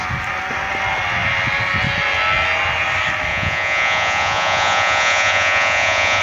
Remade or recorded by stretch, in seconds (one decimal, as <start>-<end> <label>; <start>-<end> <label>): 0.0-3.3 recorded; 3.3-6.2 remade